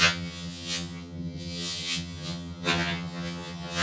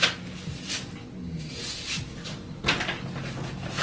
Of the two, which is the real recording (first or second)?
second